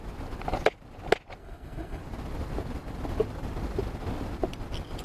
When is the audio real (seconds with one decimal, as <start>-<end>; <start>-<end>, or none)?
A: 0.0-1.4; 2.0-5.0